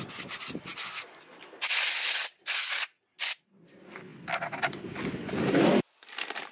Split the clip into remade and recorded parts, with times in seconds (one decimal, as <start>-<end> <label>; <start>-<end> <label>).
0.0-6.5 recorded